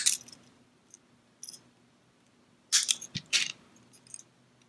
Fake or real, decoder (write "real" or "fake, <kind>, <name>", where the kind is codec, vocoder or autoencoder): real